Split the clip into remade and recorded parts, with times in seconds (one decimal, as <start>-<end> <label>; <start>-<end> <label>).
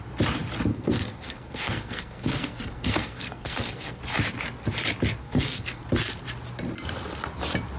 0.0-0.7 recorded; 0.7-4.0 remade; 4.0-5.2 recorded; 5.2-5.8 remade; 5.8-7.8 recorded